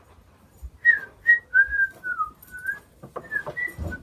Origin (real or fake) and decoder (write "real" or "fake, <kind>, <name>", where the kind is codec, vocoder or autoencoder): real